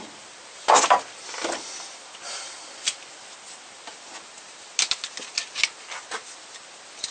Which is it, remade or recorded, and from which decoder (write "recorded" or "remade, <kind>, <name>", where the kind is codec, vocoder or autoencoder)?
recorded